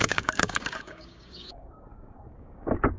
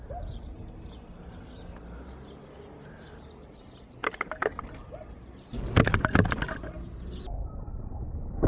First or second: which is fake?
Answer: first